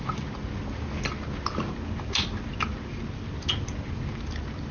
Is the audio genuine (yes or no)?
yes